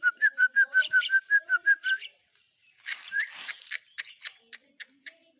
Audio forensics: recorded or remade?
remade